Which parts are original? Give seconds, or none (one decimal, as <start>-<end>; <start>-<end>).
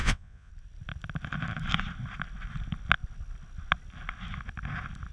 0.5-5.1